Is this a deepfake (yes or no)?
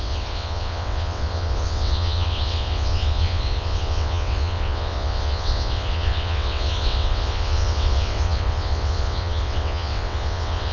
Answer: yes